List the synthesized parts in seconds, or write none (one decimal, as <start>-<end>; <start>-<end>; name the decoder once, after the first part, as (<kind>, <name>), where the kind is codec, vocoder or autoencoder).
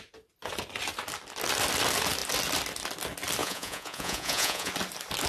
3.4-4.7 (vocoder, Vocos)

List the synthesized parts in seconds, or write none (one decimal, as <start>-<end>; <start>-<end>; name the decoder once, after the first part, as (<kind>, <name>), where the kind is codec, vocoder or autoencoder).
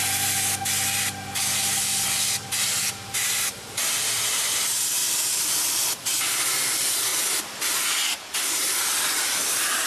5.0-5.6 (vocoder, BigVGAN v2); 7.1-9.0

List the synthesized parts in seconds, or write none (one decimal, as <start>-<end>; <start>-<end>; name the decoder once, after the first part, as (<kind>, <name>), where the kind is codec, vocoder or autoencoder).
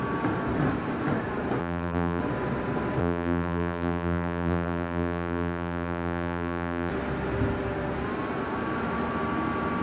1.6-2.2 (vocoder, BigVGAN v2); 3.0-6.9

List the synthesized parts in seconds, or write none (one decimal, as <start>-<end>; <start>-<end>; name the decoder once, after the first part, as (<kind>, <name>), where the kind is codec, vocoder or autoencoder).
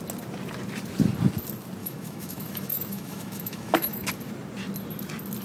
1.8-4.1 (autoencoder, DAC-VAE)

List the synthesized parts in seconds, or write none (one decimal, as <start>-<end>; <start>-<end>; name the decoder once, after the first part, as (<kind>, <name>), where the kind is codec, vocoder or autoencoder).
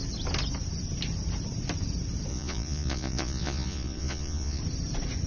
2.3-4.6 (vocoder, Vocos)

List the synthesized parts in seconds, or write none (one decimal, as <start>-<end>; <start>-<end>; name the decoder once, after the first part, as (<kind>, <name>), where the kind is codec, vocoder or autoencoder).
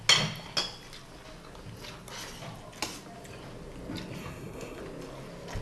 4.2-4.8 (codec, SNAC)